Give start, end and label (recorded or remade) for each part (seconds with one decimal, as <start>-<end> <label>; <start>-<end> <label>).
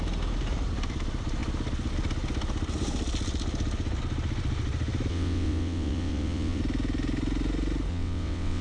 0.0-5.1 recorded; 5.1-6.6 remade; 6.6-7.9 recorded; 7.9-8.6 remade